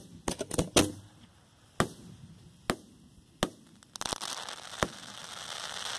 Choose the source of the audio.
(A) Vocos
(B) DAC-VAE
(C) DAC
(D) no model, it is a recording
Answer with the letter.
D